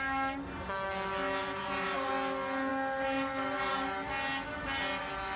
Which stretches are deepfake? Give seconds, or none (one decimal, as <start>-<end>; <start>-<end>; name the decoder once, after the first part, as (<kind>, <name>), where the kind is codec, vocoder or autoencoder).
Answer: 1.4-2.1 (vocoder, BigVGAN v2)